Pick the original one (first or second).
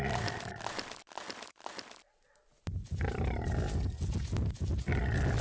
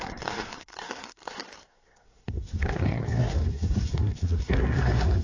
first